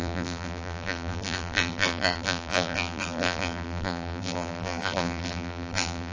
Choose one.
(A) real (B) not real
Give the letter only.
B